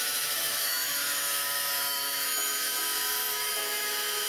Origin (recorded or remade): remade